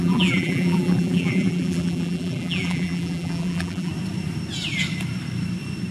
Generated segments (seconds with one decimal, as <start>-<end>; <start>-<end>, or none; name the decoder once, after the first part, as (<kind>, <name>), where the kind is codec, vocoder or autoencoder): 0.0-3.9 (vocoder, BigVGAN v2)